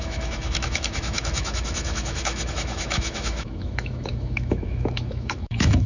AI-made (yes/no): yes